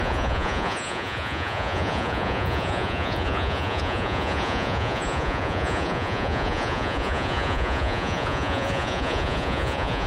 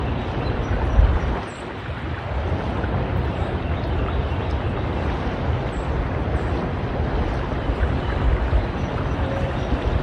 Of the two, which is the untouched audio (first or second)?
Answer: second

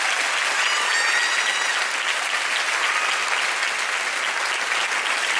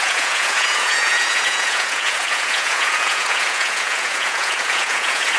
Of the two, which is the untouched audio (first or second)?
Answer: first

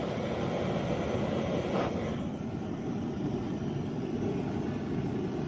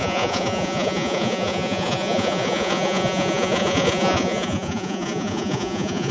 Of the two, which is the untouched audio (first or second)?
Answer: first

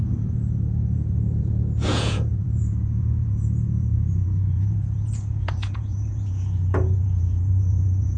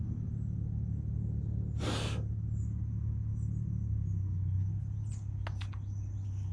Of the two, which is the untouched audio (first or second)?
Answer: second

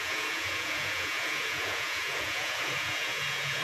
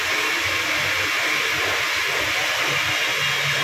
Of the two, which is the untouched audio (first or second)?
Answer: second